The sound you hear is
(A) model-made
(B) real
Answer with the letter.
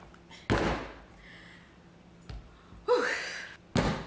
B